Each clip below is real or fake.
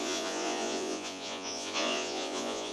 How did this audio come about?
fake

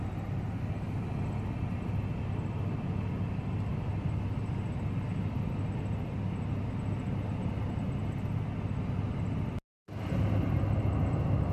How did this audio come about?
real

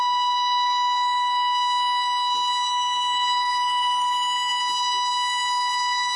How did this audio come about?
real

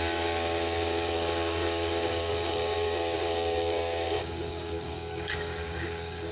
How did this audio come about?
fake